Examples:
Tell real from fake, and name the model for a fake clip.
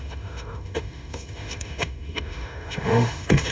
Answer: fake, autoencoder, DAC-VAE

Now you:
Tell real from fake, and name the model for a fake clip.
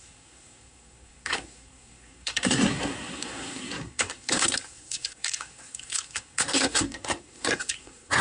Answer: fake, codec, SNAC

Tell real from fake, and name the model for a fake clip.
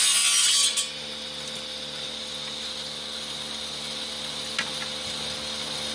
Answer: real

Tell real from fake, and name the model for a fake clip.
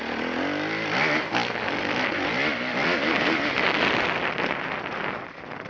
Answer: real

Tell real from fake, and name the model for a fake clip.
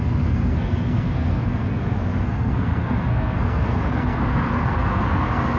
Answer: fake, codec, SNAC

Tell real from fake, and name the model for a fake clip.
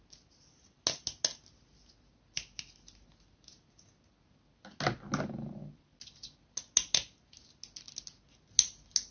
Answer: real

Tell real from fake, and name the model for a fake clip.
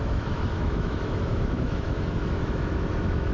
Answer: fake, autoencoder, DAC-VAE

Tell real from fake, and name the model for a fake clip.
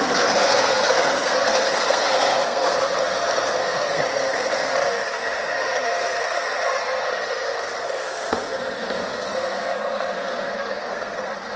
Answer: fake, codec, SNAC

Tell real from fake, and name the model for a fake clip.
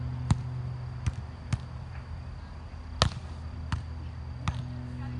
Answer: real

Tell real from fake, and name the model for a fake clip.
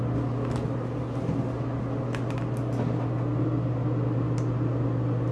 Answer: real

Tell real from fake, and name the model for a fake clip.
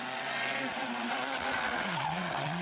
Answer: fake, vocoder, WaveNeXt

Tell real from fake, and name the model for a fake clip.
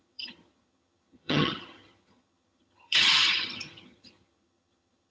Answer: fake, vocoder, HiFi-GAN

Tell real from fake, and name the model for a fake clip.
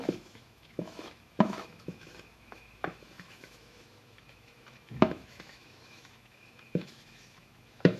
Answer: fake, autoencoder, DAC-VAE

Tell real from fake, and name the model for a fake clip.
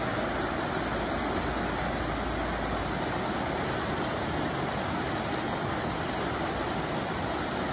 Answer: real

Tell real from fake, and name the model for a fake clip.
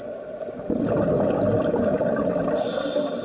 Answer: real